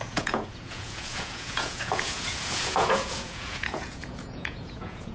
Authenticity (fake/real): fake